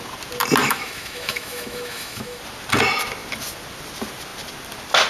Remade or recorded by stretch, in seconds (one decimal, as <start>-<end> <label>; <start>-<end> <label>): 0.0-0.6 recorded; 0.6-2.4 remade; 2.4-5.1 recorded